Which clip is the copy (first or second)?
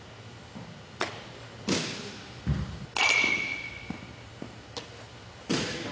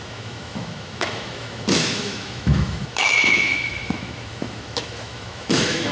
second